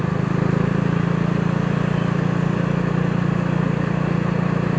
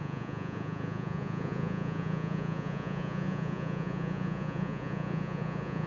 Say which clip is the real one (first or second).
first